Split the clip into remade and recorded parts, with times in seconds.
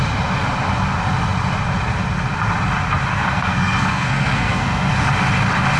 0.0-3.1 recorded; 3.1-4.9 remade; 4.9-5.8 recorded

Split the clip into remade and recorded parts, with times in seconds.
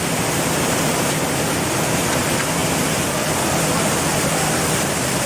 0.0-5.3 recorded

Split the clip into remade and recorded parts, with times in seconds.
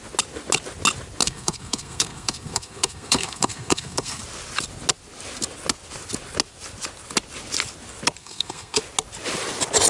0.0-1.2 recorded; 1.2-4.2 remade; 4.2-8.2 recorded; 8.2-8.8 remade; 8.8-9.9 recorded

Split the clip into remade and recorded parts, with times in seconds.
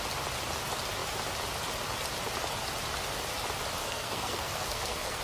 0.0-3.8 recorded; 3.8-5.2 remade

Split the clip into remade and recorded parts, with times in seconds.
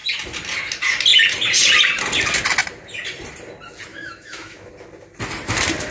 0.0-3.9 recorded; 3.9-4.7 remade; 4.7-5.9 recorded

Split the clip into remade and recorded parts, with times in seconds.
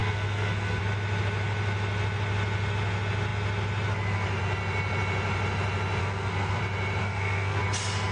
0.0-0.8 remade; 0.8-6.0 recorded; 6.0-6.6 remade; 6.6-7.0 recorded; 7.0-7.6 remade; 7.6-8.1 recorded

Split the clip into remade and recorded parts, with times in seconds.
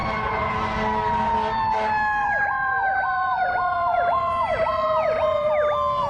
0.0-0.5 remade; 0.5-2.2 recorded; 2.2-5.5 remade; 5.5-6.1 recorded